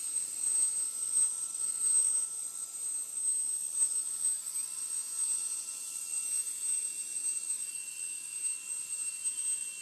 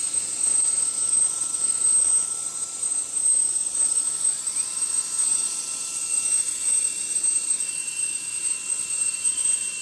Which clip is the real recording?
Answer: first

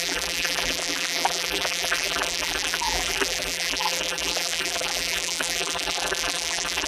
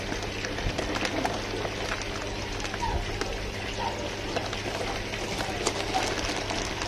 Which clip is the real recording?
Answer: second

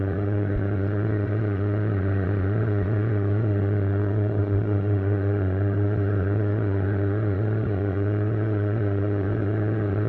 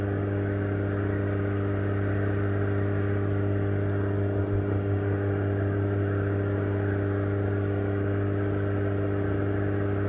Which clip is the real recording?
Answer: second